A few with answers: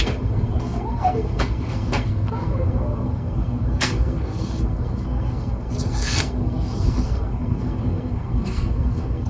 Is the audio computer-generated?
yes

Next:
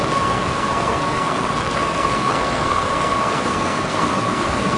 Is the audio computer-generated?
yes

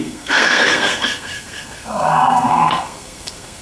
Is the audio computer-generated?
yes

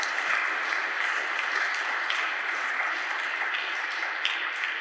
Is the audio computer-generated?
no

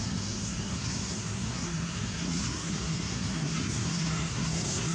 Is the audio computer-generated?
yes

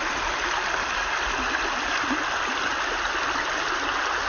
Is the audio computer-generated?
no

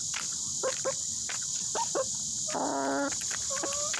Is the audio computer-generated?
no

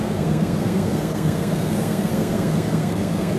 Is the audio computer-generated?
yes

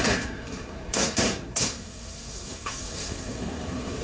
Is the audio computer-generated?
yes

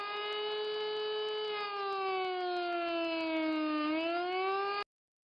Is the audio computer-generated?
no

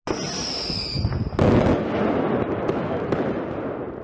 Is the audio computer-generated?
no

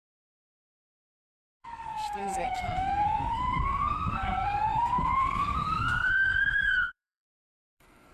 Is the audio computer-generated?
yes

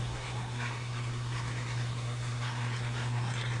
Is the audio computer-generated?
yes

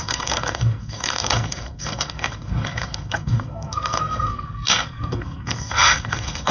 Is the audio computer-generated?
yes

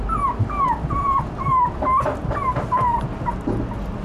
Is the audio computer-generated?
no